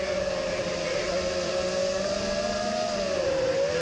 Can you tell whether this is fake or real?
real